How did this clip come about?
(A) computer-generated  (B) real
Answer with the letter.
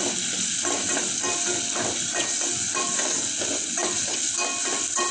B